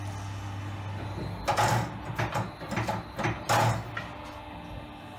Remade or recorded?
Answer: recorded